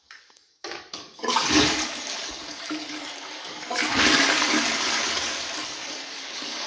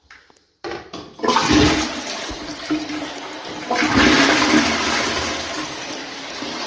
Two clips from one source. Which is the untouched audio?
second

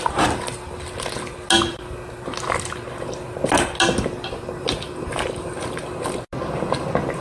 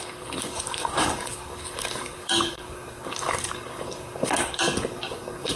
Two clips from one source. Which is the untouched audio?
first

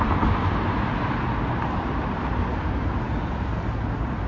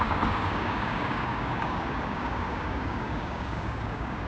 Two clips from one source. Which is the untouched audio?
first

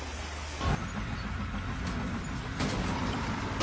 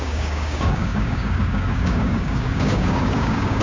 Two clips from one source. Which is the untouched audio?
first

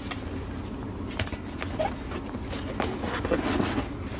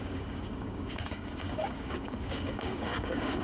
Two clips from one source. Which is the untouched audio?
first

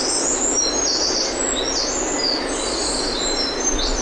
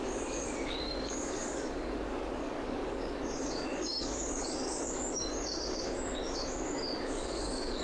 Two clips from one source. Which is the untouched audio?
first